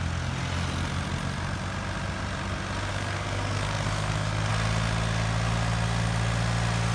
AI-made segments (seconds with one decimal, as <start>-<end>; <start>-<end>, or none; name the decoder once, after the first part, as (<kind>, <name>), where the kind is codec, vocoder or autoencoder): 2.9-4.5 (codec, DAC)